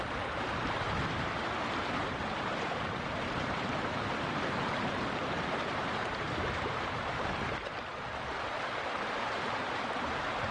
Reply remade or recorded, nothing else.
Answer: remade